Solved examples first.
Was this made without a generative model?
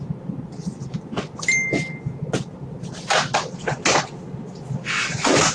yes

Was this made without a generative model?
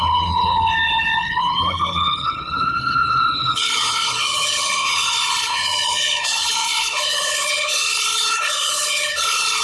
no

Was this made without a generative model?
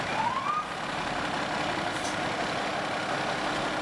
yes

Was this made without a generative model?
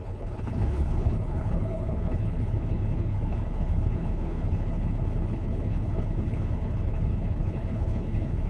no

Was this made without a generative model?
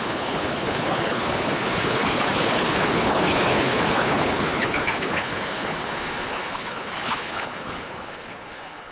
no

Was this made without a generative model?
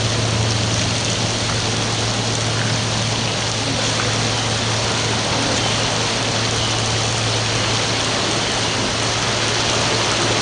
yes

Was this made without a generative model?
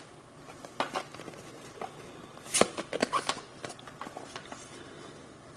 yes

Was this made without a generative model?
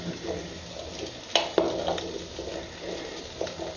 yes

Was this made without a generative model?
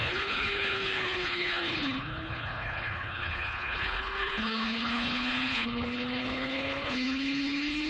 no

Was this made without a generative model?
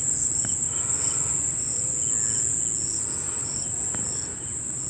yes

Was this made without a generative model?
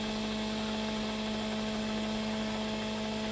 yes